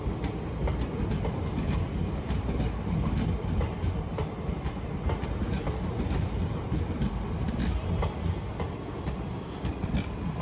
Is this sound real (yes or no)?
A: yes